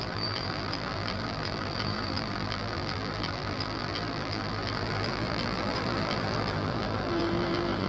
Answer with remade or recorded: remade